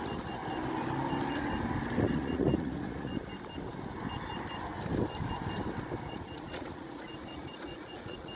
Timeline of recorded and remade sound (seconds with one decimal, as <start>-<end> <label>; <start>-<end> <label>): 0.0-0.4 remade; 0.4-2.0 recorded; 2.0-3.1 remade; 3.1-6.1 recorded; 6.1-8.4 remade